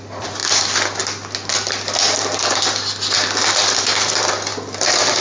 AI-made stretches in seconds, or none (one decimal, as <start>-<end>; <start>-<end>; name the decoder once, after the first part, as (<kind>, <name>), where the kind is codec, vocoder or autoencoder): none